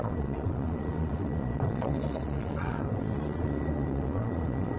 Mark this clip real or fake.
fake